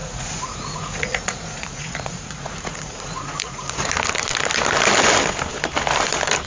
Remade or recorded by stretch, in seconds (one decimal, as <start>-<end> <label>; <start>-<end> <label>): 0.0-3.9 remade; 3.9-6.5 recorded